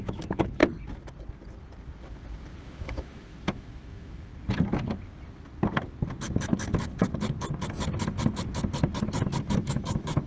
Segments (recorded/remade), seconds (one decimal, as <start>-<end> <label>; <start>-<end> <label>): 0.0-0.6 remade; 0.6-2.6 recorded; 2.6-4.3 remade; 4.3-9.4 recorded; 9.4-10.3 remade